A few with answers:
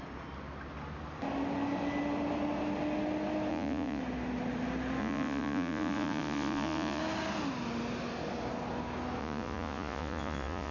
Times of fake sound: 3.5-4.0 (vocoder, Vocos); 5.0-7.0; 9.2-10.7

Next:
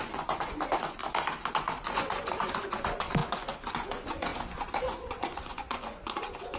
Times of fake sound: 0.0-1.0 (vocoder, Vocos); 1.5-6.6

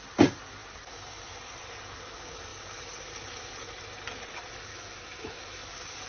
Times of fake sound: 4.7-5.6 (autoencoder, DAC-VAE)

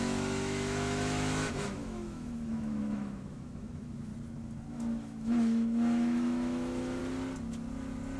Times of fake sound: 0.0-4.1 (autoencoder, DAC-VAE); 4.7-7.0

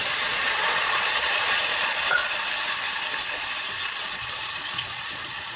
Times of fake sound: 0.0-2.2 (vocoder, Vocos); 3.3-5.6

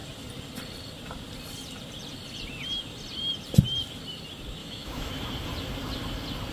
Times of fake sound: 4.6-5.1 (autoencoder, DAC-VAE)

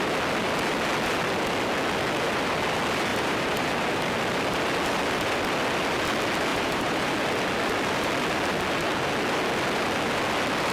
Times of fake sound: 3.1-3.7 (vocoder, BigVGAN v2); 6.5-7.1

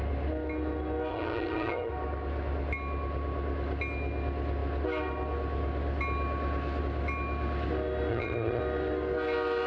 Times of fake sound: 1.1-1.9 (vocoder, HiFi-GAN); 8.1-8.6